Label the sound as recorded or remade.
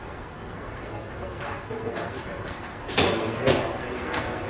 remade